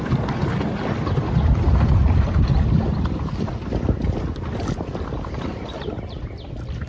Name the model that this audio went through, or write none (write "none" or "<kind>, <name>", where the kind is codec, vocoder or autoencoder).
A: none